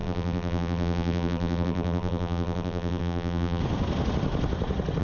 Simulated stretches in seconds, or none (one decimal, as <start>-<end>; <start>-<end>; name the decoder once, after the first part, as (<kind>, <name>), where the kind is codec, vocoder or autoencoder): 0.0-3.6 (vocoder, BigVGAN v2)